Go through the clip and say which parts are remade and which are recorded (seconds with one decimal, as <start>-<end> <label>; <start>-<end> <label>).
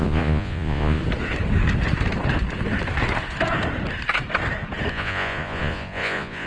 0.0-1.0 remade; 1.0-4.9 recorded; 4.9-6.5 remade